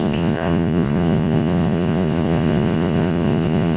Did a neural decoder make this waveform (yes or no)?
yes